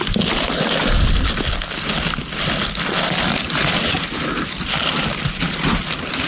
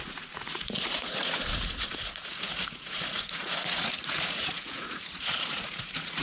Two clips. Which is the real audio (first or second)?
first